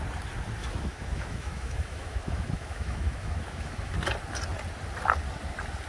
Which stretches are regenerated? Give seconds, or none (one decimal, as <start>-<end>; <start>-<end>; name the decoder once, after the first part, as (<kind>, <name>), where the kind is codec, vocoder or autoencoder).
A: 0.6-3.9 (autoencoder, DAC-VAE)